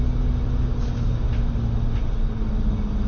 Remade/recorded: recorded